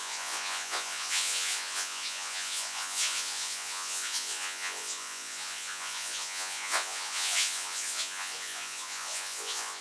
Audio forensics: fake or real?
fake